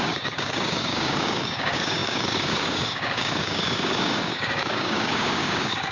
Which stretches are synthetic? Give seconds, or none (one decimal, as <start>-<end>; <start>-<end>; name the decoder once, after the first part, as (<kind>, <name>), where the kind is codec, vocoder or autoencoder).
0.0-5.9 (codec, DAC)